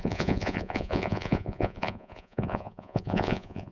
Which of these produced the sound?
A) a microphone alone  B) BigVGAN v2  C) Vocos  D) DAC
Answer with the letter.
C